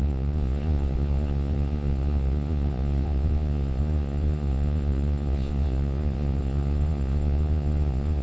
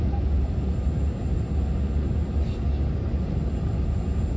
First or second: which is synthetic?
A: first